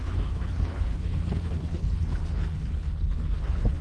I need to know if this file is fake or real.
fake